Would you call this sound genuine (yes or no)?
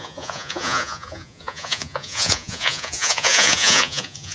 no